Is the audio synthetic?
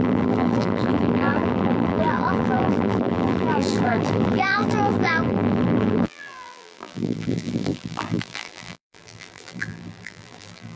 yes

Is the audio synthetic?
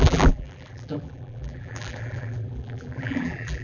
yes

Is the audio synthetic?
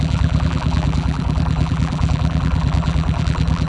yes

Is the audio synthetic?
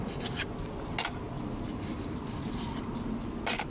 no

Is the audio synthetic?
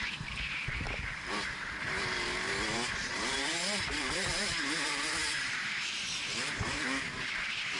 yes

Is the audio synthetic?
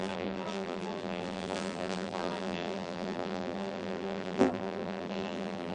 yes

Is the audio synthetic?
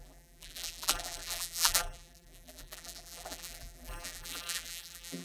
yes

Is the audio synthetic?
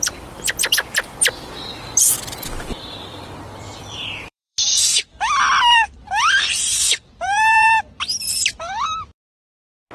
yes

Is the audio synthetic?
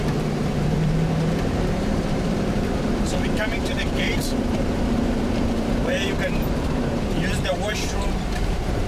yes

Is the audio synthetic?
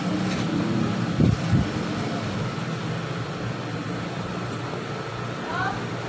yes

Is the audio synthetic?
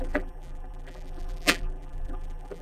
yes